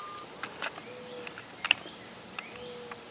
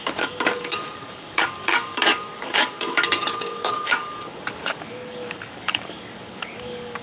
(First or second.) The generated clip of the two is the second